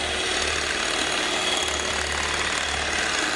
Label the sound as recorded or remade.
recorded